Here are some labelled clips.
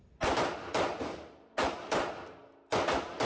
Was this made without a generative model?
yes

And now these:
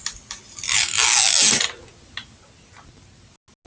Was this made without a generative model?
yes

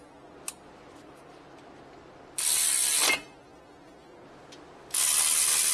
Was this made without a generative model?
yes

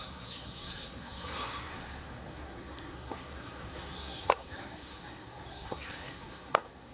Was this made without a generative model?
no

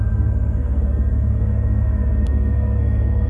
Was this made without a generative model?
no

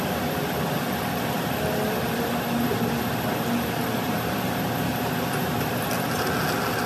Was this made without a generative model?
yes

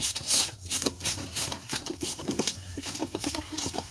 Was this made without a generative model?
no